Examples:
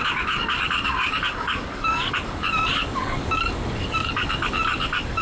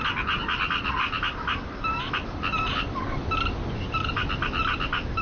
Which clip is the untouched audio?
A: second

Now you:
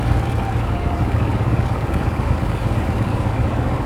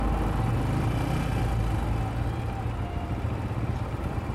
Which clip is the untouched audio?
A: second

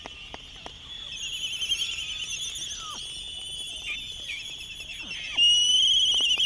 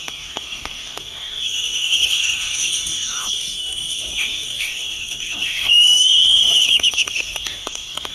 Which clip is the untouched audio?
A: first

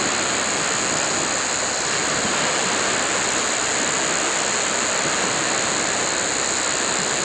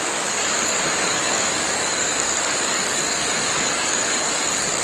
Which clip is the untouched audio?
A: first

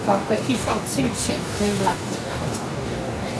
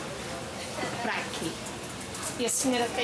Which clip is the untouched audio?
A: second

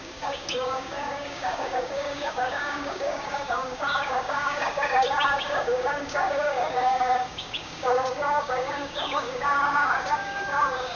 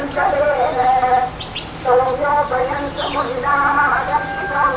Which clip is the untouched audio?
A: second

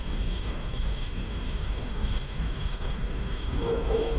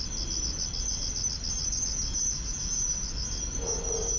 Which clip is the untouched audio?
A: second